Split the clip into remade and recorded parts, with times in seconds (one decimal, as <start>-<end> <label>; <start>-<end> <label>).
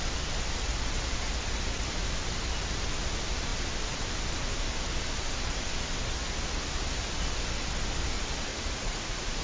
0.0-8.5 recorded; 8.5-9.4 remade